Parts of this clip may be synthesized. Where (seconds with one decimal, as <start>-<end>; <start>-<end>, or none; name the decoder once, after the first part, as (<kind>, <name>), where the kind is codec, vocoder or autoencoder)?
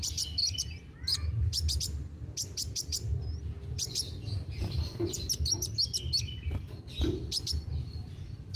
none